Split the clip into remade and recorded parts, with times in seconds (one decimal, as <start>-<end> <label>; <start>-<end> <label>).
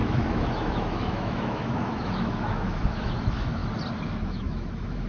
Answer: 0.0-3.6 remade; 3.6-4.1 recorded; 4.1-5.1 remade